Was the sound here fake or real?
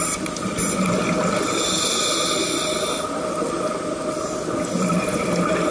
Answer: real